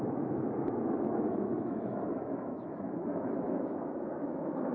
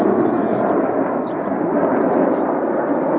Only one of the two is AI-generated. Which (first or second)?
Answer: first